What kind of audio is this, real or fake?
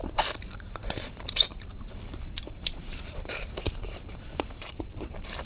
fake